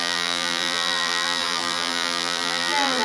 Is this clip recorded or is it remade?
remade